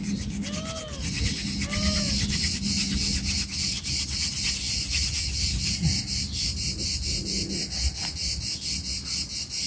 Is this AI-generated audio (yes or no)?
no